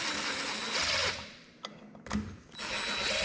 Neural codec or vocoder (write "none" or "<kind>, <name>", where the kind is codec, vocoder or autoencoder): none